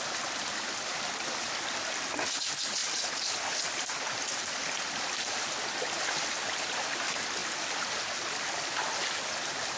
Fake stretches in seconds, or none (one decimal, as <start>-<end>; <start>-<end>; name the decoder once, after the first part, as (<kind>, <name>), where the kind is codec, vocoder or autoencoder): none